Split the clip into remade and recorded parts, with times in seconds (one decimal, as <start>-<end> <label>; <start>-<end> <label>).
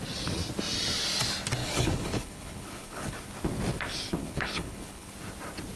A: 0.0-1.6 recorded; 1.6-3.1 remade; 3.1-4.2 recorded; 4.2-5.1 remade; 5.1-5.8 recorded